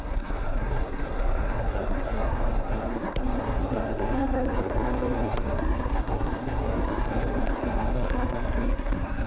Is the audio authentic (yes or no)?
no